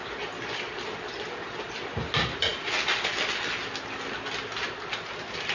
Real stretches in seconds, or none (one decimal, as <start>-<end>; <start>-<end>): 0.0-5.5